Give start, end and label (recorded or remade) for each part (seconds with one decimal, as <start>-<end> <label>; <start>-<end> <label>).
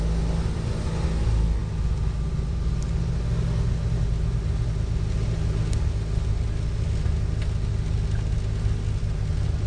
0.0-9.7 recorded